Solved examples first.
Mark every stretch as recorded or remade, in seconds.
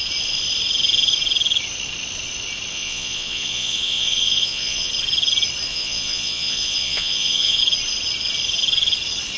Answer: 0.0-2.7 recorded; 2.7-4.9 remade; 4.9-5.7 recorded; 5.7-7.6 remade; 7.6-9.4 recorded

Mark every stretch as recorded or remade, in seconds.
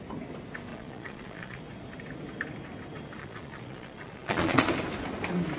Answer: 0.0-0.7 recorded; 0.7-1.6 remade; 1.6-3.2 recorded; 3.2-4.7 remade; 4.7-5.6 recorded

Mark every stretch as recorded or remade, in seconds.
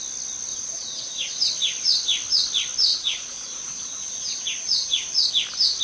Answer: 0.0-0.5 recorded; 0.5-1.4 remade; 1.4-2.9 recorded; 2.9-5.3 remade; 5.3-5.8 recorded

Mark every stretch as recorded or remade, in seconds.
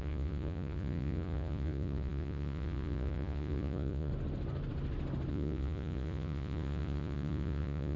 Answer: 0.0-4.1 remade; 4.1-5.3 recorded; 5.3-8.0 remade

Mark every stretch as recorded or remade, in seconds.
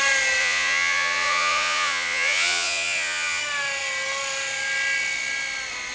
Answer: 0.0-0.4 recorded; 0.4-3.4 remade; 3.4-5.9 recorded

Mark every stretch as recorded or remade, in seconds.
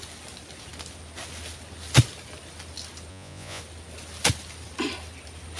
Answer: 0.0-3.1 recorded; 3.1-3.6 remade; 3.6-5.6 recorded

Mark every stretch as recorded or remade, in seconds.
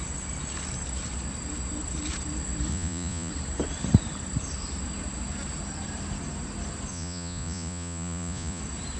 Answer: 0.0-2.7 recorded; 2.7-3.3 remade; 3.3-6.9 recorded; 6.9-8.6 remade; 8.6-9.0 recorded